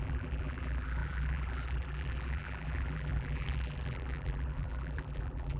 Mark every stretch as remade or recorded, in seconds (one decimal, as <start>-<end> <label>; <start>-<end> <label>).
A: 0.0-5.6 remade

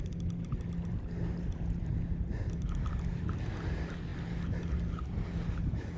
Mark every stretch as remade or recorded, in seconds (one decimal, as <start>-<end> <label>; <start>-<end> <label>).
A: 0.0-1.3 recorded; 1.3-1.9 remade; 1.9-6.0 recorded

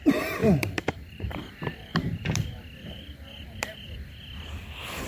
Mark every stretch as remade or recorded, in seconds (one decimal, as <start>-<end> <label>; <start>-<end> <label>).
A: 0.0-0.4 recorded; 0.4-1.5 remade; 1.5-1.9 recorded; 1.9-2.5 remade; 2.5-5.1 recorded

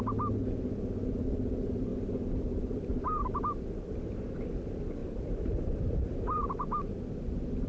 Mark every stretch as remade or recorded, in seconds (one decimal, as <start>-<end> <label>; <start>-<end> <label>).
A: 0.0-5.0 recorded; 5.0-6.9 remade; 6.9-7.7 recorded

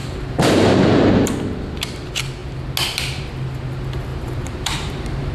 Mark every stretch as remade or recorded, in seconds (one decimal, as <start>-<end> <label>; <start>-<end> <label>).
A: 0.0-1.3 remade; 1.3-4.1 recorded; 4.1-5.3 remade